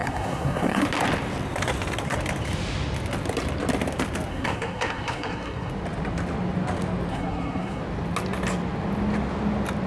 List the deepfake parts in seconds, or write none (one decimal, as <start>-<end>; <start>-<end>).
0.0-0.8; 4.3-5.7; 7.1-7.8